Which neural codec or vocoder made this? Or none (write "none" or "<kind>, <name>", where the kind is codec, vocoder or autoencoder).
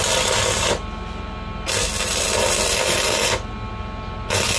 none